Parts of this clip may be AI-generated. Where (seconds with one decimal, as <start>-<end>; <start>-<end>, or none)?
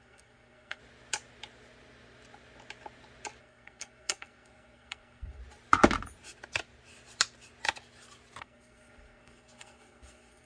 0.0-0.8; 3.4-5.4; 8.4-10.5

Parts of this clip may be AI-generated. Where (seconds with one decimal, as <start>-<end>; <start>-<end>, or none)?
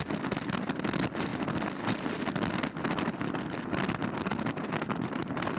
none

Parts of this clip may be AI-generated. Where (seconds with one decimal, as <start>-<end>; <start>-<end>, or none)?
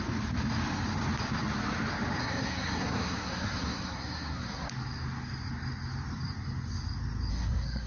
2.2-4.7; 7.3-7.9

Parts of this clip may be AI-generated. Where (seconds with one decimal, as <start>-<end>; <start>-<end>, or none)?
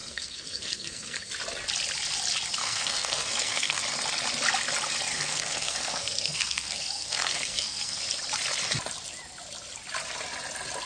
0.0-1.3; 2.6-3.8; 5.1-8.0